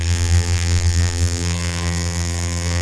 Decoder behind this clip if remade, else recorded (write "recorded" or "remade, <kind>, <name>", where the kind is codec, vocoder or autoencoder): remade, vocoder, BigVGAN v2